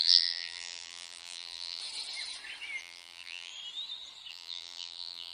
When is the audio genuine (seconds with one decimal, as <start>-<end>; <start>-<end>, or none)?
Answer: 1.8-2.8; 3.5-4.3